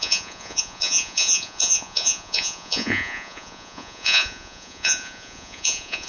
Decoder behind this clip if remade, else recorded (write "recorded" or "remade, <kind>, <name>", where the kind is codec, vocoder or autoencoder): remade, vocoder, Vocos